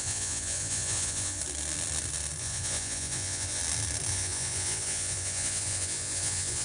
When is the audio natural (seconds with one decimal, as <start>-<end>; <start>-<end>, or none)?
1.4-2.4; 3.6-4.1